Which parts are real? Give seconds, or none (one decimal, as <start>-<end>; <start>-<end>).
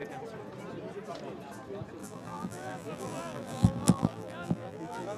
0.0-2.0